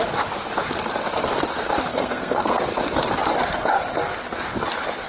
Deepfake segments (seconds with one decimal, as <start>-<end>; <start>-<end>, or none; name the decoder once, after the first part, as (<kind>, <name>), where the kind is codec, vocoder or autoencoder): 1.9-2.6 (codec, SNAC)